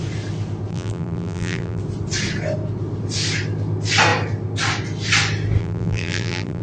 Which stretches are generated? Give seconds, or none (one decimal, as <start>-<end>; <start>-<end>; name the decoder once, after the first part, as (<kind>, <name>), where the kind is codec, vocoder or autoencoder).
0.7-1.8 (vocoder, BigVGAN v2); 5.6-6.6